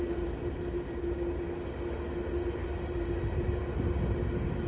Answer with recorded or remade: recorded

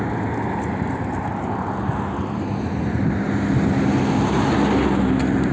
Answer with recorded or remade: recorded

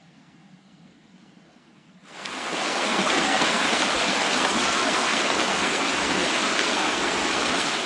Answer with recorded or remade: remade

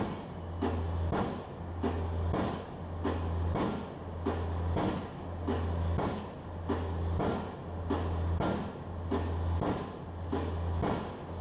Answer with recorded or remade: recorded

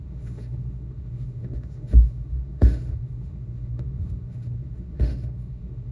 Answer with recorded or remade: remade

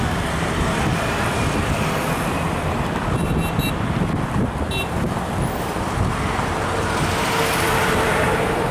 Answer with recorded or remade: recorded